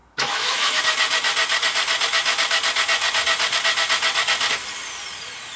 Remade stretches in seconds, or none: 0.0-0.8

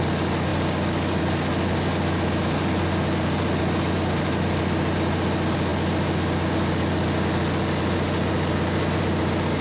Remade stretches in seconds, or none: none